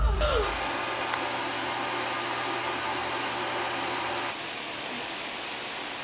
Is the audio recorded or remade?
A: recorded